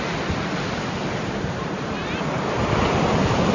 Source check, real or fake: real